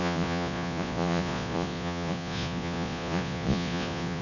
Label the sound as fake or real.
fake